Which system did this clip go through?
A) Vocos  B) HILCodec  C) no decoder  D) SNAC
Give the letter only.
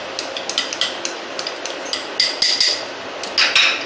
C